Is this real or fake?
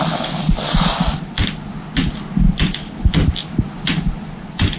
real